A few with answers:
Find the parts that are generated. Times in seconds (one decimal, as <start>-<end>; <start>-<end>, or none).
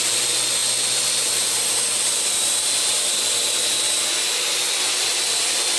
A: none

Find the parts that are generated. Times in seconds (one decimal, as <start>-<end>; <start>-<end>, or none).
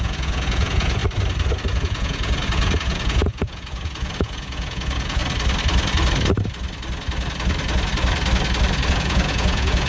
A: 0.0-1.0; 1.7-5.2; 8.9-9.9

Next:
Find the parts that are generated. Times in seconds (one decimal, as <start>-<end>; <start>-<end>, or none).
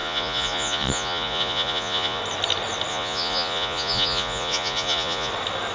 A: 0.0-2.2; 2.9-5.3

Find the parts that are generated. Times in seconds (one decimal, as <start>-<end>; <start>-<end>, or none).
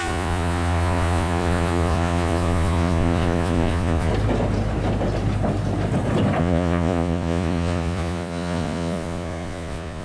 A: 0.0-4.1; 6.4-10.0